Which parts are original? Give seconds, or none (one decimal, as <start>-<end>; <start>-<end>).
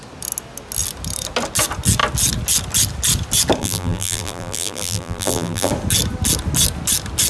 0.0-3.6; 5.7-7.3